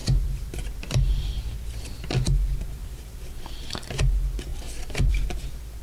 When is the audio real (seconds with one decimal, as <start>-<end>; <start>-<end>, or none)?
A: 1.2-2.8; 3.6-4.5; 5.1-5.8